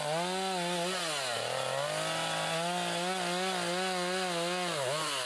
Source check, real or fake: real